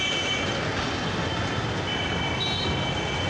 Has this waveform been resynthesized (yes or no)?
no